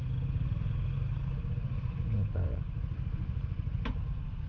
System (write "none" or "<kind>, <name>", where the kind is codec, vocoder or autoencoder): none